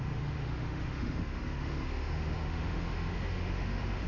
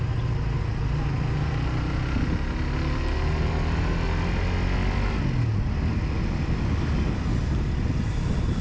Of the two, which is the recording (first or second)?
second